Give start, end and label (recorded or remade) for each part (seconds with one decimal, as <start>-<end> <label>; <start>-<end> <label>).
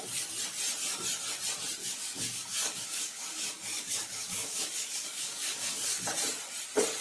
0.0-1.8 recorded; 1.8-6.0 remade; 6.0-7.0 recorded